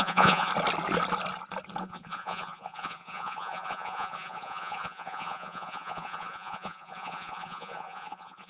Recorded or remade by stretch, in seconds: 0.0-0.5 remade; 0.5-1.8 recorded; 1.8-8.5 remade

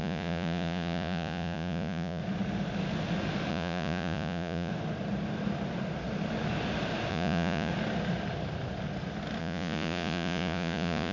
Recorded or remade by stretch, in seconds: 0.0-2.2 remade; 2.2-3.5 recorded; 3.5-4.7 remade; 4.7-7.1 recorded; 7.1-7.7 remade; 7.7-9.4 recorded; 9.4-11.1 remade

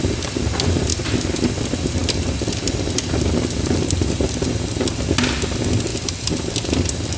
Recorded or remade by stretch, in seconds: 0.0-7.2 recorded

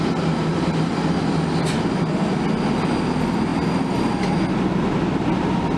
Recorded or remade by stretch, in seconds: 0.0-5.8 recorded

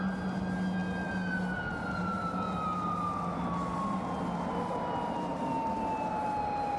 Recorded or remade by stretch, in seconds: 0.0-6.8 recorded

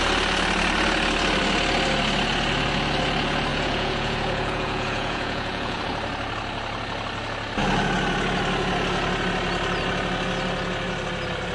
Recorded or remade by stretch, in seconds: 0.0-3.5 recorded; 3.5-5.8 remade; 5.8-11.5 recorded